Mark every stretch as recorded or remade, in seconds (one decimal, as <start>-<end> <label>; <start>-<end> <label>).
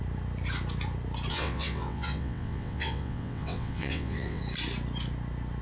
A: 0.0-1.3 recorded; 1.3-4.4 remade; 4.4-5.6 recorded